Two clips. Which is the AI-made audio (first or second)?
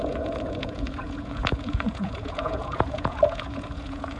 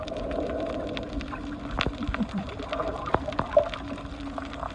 first